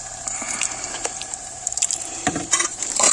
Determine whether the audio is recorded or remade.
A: remade